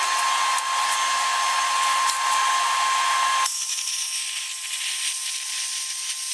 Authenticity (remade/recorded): recorded